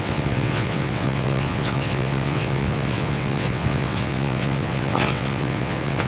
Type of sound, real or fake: fake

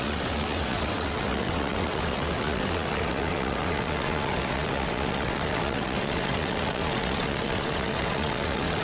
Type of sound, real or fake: fake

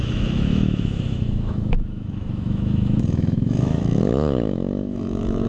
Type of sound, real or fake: fake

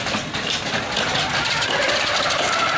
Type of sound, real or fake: real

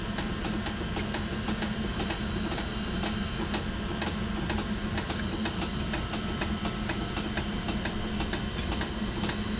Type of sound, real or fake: real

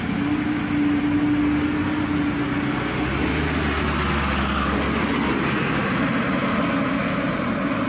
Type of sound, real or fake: real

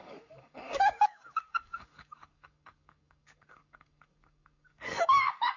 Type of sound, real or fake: fake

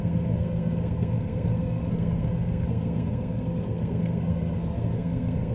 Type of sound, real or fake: fake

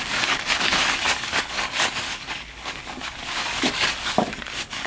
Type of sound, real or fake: fake